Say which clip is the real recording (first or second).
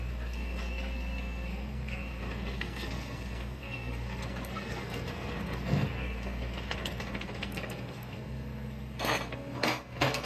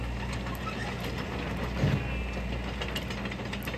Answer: second